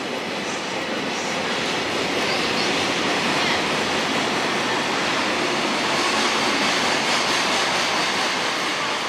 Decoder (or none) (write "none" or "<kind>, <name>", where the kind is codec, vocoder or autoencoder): none